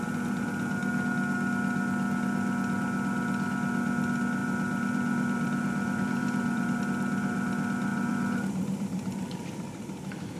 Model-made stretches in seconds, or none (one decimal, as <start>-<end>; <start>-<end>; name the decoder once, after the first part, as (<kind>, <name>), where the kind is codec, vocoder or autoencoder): 4.4-6.8 (vocoder, BigVGAN v2); 7.9-10.4